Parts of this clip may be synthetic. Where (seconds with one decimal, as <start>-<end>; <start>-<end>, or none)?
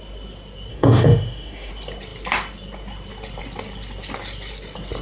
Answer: 0.7-1.7